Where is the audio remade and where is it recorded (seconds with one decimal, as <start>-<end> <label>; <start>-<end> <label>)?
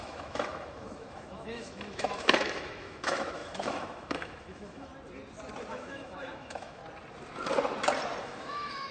0.0-4.9 remade; 4.9-5.7 recorded; 5.7-6.8 remade; 6.8-8.2 recorded; 8.2-8.9 remade